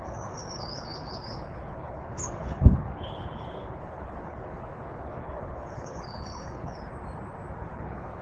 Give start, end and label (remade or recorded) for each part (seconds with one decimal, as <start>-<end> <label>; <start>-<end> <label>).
0.0-6.9 remade; 6.9-7.6 recorded; 7.6-8.2 remade